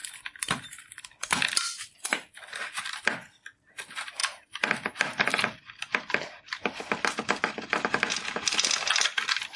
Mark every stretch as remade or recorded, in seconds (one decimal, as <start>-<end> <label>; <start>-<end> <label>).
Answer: 0.0-2.5 remade; 2.5-4.2 recorded; 4.2-5.3 remade; 5.3-9.6 recorded